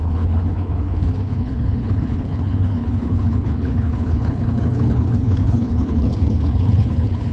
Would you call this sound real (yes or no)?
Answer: no